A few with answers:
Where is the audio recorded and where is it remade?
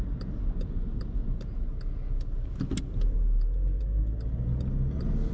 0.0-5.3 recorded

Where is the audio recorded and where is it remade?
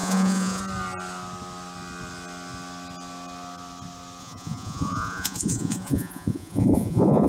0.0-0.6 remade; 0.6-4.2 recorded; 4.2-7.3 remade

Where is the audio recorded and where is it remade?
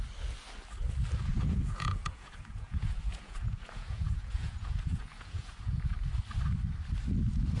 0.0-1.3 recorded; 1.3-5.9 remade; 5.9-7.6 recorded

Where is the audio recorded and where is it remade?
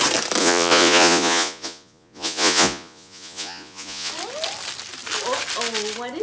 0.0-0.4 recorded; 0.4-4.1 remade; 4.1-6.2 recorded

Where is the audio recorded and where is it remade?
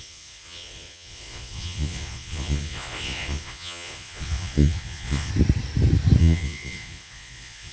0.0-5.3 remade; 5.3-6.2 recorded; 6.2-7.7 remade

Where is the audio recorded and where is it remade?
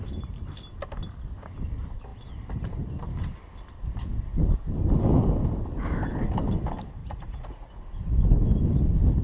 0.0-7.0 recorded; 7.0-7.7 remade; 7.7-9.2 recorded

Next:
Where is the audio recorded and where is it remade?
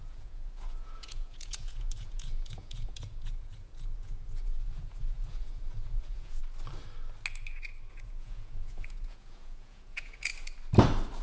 0.0-6.4 remade; 6.4-7.9 recorded; 7.9-10.3 remade; 10.3-11.2 recorded